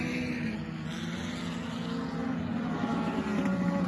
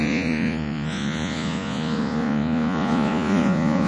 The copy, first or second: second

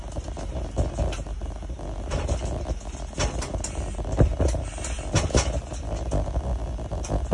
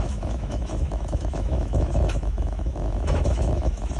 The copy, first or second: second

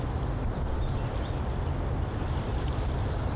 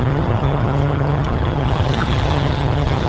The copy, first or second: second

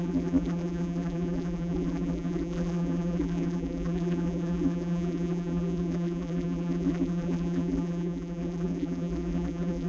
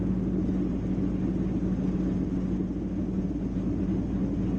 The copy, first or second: first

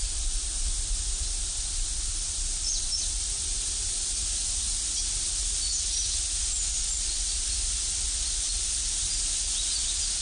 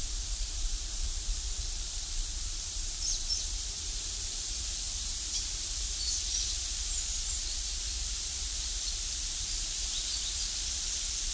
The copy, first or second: second